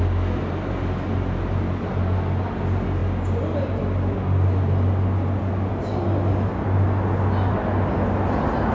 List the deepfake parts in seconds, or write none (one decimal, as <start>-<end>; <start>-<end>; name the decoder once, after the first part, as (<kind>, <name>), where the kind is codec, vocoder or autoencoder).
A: none